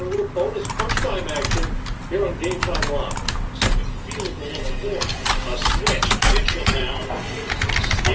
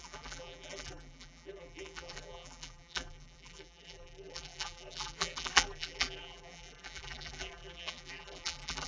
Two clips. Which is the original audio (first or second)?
first